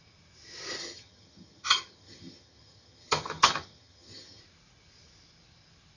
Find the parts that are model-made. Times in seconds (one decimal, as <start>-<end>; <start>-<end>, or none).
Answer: 0.8-4.4

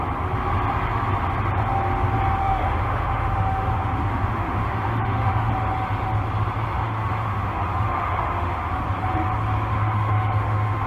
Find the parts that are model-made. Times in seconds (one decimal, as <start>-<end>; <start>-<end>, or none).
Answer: 2.4-5.5; 6.8-8.7; 9.7-10.9